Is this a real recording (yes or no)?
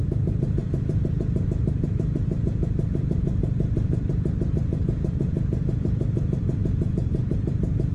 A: no